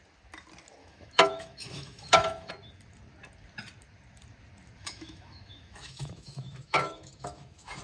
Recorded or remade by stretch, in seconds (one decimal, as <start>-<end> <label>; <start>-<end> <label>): 0.0-0.8 recorded; 0.8-2.5 remade; 2.5-4.8 recorded; 4.8-7.8 remade